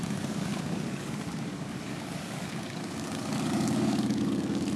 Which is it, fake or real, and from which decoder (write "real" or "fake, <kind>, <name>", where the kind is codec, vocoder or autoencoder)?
fake, codec, DAC